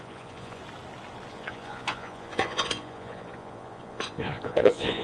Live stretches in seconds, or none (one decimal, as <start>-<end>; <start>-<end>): 0.6-1.3